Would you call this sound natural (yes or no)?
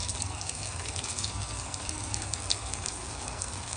no